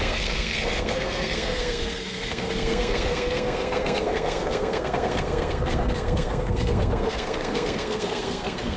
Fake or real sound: fake